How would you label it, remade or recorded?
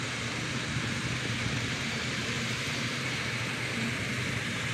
remade